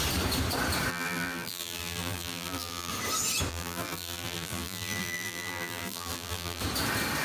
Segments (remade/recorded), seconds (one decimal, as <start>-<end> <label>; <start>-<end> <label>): 0.0-0.9 recorded; 0.9-2.9 remade; 2.9-3.5 recorded; 3.5-6.6 remade; 6.6-7.2 recorded